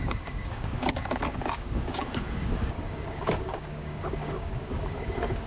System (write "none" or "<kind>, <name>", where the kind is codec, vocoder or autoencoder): codec, DAC